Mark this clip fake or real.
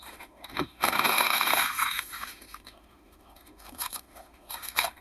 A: fake